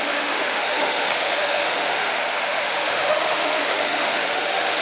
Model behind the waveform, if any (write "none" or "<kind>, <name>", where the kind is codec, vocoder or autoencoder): autoencoder, DAC-VAE